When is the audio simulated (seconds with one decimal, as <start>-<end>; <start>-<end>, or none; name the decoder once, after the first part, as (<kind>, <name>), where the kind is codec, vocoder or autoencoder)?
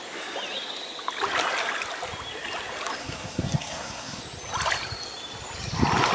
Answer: 3.0-4.2 (codec, SNAC)